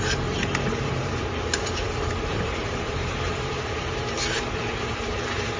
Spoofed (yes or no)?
yes